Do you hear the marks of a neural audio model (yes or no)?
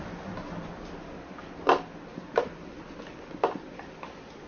no